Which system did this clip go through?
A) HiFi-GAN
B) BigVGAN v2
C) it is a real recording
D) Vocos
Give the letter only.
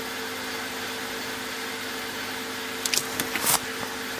C